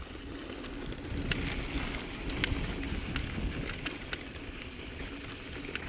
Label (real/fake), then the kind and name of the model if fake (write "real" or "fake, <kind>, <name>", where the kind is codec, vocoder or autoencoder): real